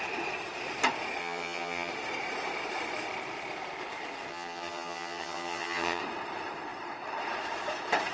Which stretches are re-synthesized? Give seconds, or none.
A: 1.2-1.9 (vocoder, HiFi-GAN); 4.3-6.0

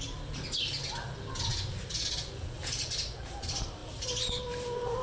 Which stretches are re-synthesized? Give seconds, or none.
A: none

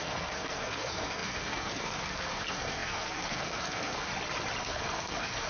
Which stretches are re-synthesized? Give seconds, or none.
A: 0.0-4.1 (codec, SNAC); 4.6-5.5

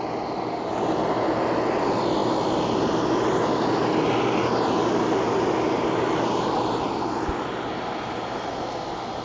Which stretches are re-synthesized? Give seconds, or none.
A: none

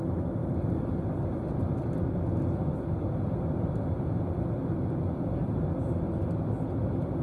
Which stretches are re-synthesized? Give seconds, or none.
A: none